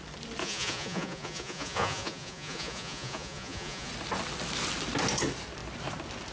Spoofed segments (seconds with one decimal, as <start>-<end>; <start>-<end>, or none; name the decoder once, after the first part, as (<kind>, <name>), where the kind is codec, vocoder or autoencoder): 0.4-3.9 (vocoder, Vocos)